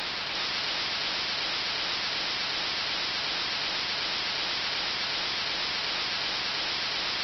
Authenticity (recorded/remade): recorded